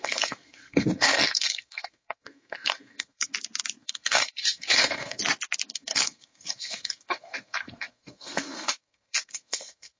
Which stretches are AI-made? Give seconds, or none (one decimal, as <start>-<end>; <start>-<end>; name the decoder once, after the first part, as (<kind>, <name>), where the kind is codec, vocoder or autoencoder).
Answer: 0.0-3.3 (codec, SNAC); 3.8-5.2; 5.7-10.0